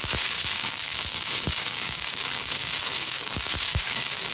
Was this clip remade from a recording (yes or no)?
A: yes